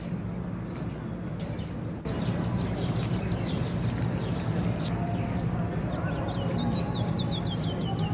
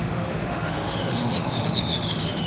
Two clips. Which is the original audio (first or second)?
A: first